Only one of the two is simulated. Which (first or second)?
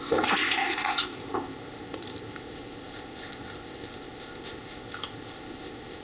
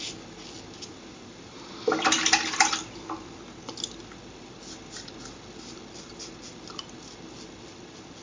first